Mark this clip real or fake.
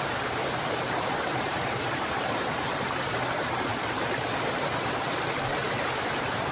fake